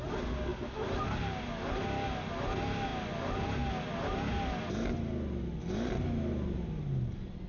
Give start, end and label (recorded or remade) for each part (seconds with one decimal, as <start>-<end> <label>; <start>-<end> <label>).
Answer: 0.0-7.5 recorded